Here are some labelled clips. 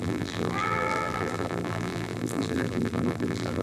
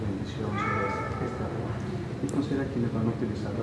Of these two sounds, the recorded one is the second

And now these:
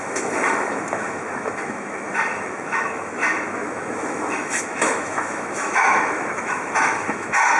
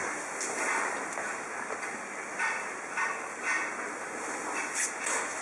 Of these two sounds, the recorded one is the second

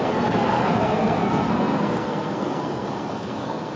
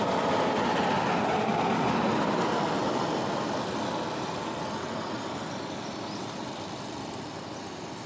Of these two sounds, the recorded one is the second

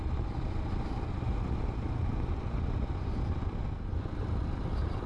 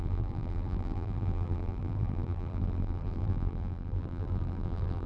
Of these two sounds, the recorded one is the first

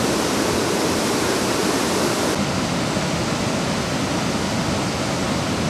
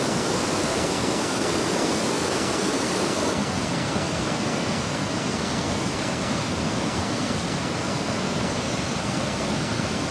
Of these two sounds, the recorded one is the first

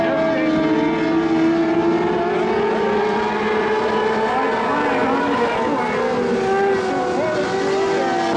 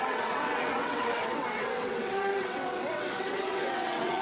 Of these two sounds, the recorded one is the first